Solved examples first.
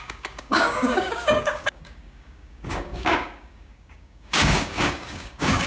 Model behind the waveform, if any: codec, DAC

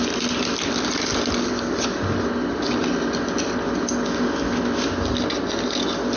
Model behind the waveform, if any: none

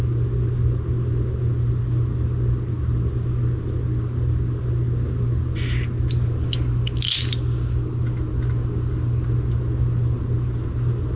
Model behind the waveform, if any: none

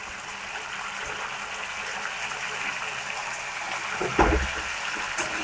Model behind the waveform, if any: none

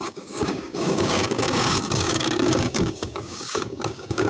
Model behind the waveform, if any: codec, DAC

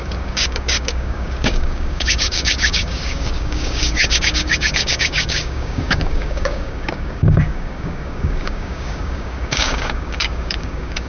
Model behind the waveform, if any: codec, DAC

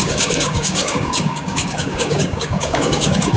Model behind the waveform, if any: codec, DAC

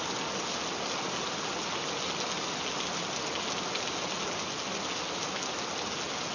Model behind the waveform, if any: none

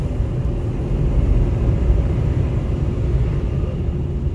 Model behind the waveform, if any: none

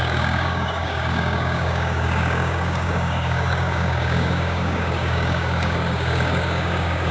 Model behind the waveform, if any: codec, DAC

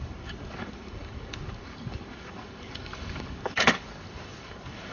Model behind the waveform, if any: codec, DAC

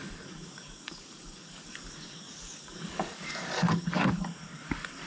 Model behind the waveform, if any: codec, DAC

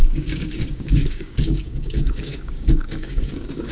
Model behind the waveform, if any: codec, DAC